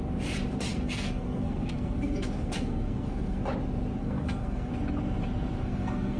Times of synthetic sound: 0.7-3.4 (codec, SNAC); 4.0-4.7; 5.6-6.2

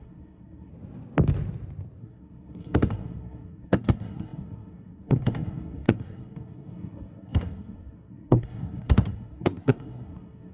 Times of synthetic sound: 0.0-0.7 (codec, SNAC); 2.0-10.5

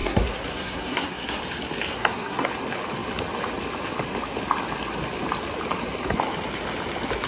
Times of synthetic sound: 0.0-1.4 (codec, SNAC); 1.9-2.5

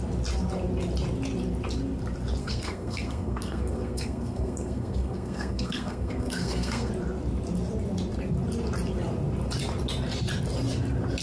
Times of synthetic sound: 2.4-6.9 (codec, SNAC)

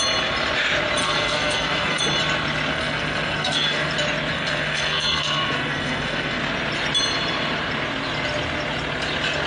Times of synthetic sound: 1.0-2.0 (codec, SNAC); 2.7-3.9; 4.3-6.4

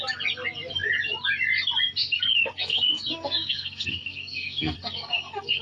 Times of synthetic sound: 2.0-5.6 (codec, SNAC)

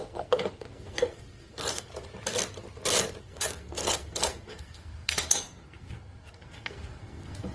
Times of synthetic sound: 0.0-1.9 (codec, SNAC); 3.2-7.5